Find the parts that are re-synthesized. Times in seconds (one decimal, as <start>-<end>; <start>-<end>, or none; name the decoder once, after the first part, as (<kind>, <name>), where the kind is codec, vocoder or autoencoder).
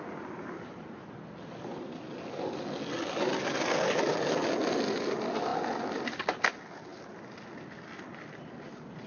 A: none